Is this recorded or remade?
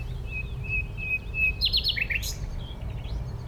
remade